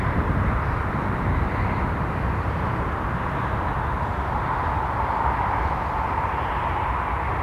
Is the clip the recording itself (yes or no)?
yes